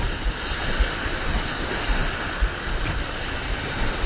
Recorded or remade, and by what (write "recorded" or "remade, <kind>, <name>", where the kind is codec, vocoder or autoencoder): recorded